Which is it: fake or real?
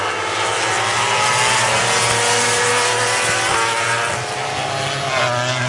real